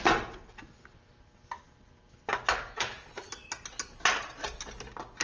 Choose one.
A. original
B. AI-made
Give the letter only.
A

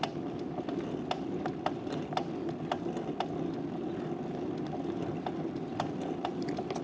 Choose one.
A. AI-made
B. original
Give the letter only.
B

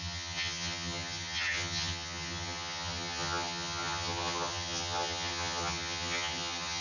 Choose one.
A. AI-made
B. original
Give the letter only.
A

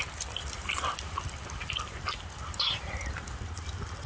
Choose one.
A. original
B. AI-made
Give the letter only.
A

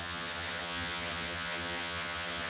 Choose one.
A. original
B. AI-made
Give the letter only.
B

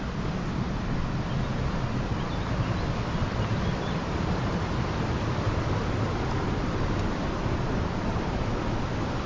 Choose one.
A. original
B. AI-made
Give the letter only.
A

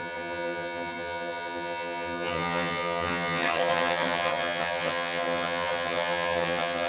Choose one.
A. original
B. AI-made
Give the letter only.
B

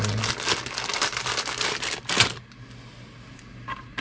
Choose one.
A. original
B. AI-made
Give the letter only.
A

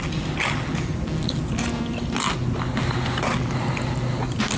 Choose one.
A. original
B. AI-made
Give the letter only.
A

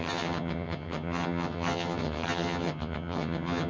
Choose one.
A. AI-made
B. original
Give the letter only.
A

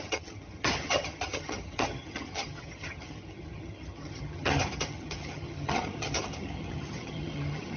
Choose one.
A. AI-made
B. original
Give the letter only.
A